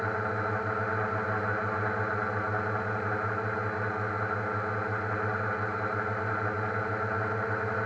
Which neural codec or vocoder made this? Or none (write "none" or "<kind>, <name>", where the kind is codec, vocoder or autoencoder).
none